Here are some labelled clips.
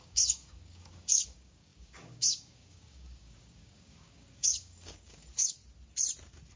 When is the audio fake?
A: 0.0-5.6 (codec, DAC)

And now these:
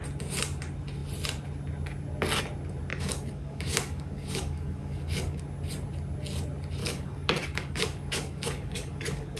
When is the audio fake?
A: 2.9-5.4 (codec, DAC); 6.8-9.4

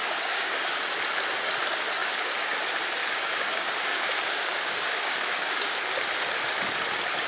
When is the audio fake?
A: 0.0-0.8 (codec, DAC); 2.0-2.6; 3.0-5.9

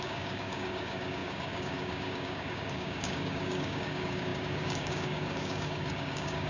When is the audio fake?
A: 0.0-6.5 (codec, DAC)

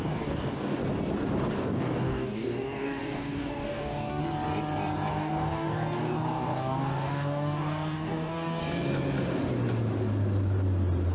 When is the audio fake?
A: 0.0-0.8 (codec, DAC); 1.6-4.2; 5.1-8.6